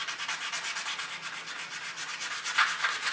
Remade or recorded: recorded